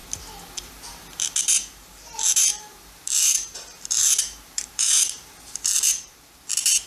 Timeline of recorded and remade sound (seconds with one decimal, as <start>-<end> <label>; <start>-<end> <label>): 0.0-1.4 recorded; 1.4-6.9 remade